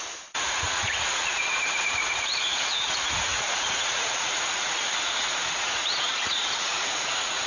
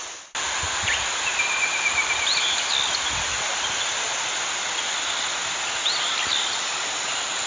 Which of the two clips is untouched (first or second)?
second